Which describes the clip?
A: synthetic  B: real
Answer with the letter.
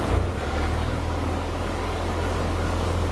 A